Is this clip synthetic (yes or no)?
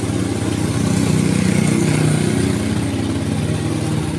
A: no